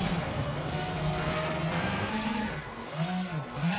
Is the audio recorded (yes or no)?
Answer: no